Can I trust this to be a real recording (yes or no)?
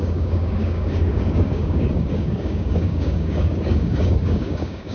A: no